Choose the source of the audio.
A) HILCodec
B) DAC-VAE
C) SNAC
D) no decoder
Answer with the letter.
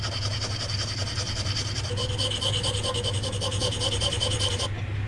D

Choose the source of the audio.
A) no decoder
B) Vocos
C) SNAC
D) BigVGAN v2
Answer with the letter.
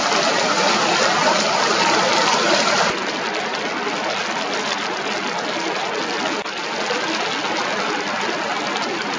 A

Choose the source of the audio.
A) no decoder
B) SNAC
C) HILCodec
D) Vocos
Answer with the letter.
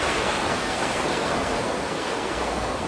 B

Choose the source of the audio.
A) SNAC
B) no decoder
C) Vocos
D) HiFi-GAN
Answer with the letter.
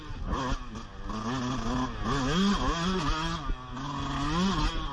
B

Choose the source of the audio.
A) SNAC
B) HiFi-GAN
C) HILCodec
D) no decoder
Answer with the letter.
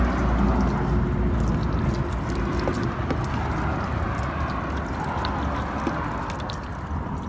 D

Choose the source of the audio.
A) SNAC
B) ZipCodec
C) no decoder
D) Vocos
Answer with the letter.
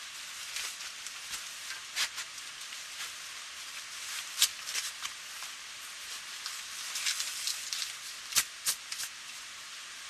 C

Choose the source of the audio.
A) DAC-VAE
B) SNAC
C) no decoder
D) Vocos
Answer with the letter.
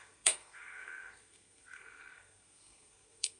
B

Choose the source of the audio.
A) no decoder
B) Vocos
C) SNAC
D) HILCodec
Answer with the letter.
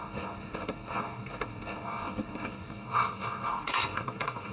C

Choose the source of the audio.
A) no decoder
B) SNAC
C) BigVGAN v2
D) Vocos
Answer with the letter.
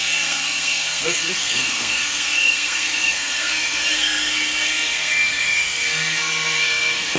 B